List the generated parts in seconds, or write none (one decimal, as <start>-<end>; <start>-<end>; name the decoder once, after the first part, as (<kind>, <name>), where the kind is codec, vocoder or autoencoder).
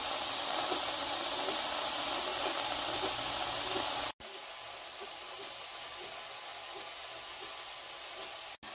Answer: none